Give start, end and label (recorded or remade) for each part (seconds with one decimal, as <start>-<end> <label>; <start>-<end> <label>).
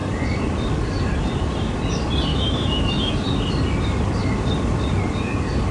0.0-2.3 recorded; 2.3-3.1 remade; 3.1-5.7 recorded